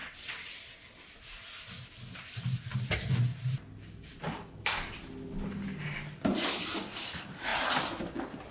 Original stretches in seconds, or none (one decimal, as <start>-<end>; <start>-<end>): 0.5-8.5